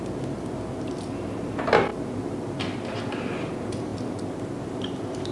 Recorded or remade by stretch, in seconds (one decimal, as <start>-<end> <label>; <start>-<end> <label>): 0.0-5.3 recorded